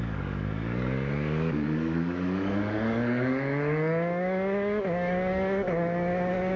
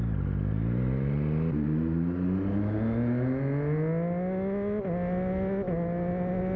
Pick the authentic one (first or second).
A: second